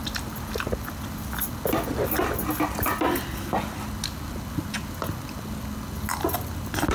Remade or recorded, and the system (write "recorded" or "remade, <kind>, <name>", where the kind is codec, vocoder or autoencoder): recorded